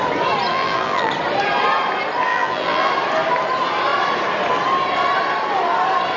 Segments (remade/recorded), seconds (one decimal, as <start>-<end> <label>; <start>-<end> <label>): 0.0-0.5 recorded; 0.5-1.1 remade; 1.1-2.3 recorded; 2.3-2.9 remade; 2.9-6.2 recorded